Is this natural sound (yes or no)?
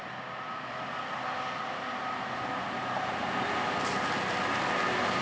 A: yes